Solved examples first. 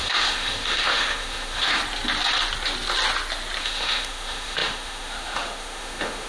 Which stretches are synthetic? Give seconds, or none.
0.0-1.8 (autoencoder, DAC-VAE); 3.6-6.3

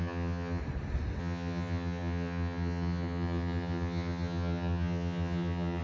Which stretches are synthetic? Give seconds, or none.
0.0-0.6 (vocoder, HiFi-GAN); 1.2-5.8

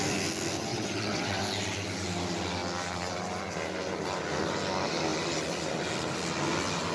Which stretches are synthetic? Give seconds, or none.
0.7-1.4 (vocoder, WaveNeXt)

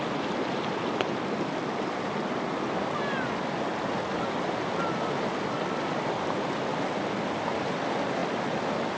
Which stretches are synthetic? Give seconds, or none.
none

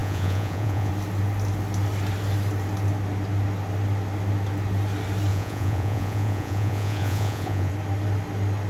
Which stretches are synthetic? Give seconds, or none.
0.0-0.9 (vocoder, Vocos); 5.3-7.7

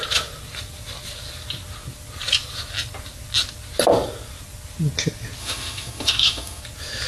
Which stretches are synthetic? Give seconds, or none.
5.4-6.6 (autoencoder, DAC-VAE)

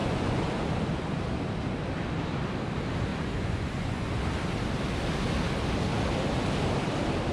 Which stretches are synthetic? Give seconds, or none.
0.0-0.5 (vocoder, Vocos); 3.1-4.2